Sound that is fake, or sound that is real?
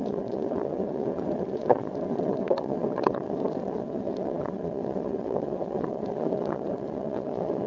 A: fake